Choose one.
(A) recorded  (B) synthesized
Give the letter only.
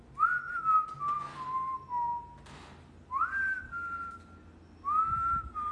A